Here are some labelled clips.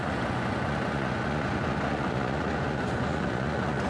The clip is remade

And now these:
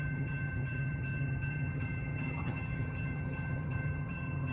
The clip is remade